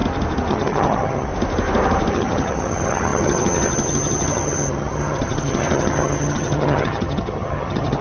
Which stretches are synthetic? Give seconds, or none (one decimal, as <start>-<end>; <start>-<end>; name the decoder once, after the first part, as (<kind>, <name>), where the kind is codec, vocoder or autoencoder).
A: 0.5-1.3 (vocoder, HiFi-GAN); 2.1-8.0